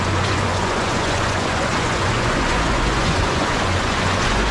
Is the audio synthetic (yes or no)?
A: yes